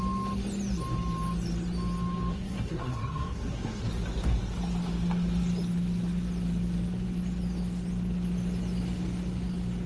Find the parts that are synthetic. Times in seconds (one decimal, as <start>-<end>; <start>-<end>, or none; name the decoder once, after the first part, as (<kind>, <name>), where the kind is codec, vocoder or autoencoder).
2.3-3.8 (codec, SNAC)